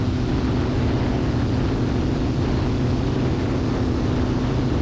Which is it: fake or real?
real